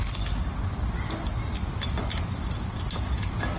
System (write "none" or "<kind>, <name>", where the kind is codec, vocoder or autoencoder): none